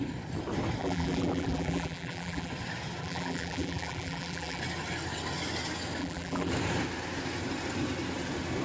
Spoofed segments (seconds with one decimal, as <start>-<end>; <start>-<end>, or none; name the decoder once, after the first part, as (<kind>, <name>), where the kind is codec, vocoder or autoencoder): 0.8-2.5 (vocoder, BigVGAN v2); 3.0-4.6; 6.0-6.5